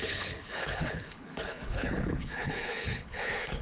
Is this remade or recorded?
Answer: remade